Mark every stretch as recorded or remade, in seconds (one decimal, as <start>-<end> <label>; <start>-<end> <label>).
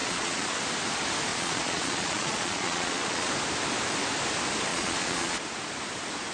0.0-0.6 remade; 0.6-1.3 recorded; 1.3-3.3 remade; 3.3-4.7 recorded; 4.7-5.4 remade; 5.4-6.3 recorded